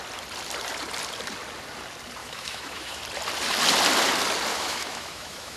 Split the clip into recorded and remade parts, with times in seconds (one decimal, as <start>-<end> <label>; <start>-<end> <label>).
0.0-2.2 recorded; 2.2-3.0 remade; 3.0-4.5 recorded; 4.5-5.6 remade